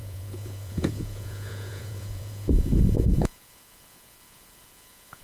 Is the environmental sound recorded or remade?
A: remade